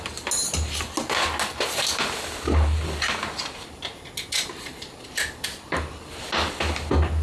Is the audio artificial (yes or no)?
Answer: no